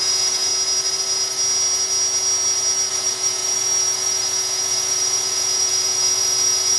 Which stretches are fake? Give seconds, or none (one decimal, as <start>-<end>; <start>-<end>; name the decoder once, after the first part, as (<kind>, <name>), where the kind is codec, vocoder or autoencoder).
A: 0.0-0.5 (vocoder, Vocos); 2.9-6.8